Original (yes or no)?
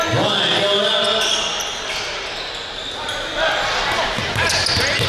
yes